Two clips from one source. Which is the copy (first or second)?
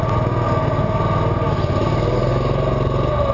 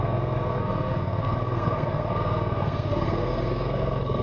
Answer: second